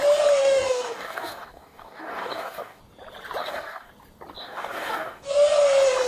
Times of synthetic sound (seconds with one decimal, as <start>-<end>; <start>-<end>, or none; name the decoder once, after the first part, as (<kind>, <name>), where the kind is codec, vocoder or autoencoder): 0.4-2.8 (codec, DAC); 3.4-3.9; 4.4-5.3